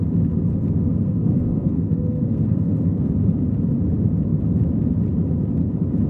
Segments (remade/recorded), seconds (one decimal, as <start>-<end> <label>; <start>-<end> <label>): 0.0-0.8 recorded; 0.8-3.1 remade; 3.1-6.1 recorded